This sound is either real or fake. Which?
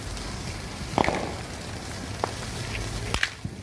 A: real